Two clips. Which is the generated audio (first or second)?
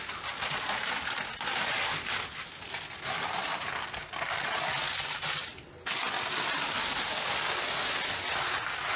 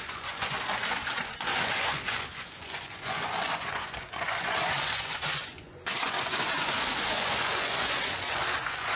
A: second